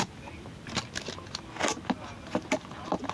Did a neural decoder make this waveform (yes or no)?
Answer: no